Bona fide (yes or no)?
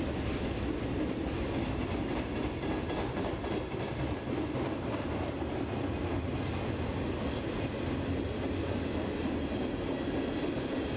yes